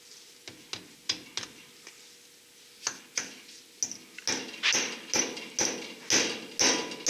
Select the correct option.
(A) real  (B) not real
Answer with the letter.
A